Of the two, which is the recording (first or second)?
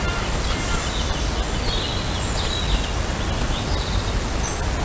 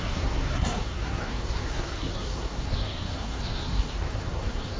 first